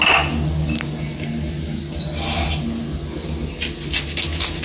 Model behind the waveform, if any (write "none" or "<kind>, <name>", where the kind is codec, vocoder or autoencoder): none